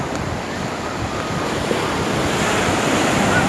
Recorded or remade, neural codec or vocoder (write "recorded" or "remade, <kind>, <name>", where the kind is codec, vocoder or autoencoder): recorded